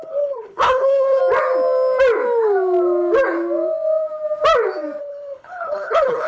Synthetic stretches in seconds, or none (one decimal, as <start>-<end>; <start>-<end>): 0.0-1.2; 5.0-6.3